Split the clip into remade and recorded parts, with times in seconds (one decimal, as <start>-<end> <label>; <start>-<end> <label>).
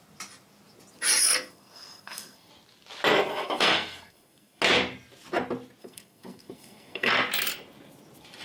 0.0-1.2 recorded; 1.2-2.5 remade; 2.5-3.3 recorded; 3.3-4.6 remade; 4.6-5.8 recorded; 5.8-7.1 remade; 7.1-8.4 recorded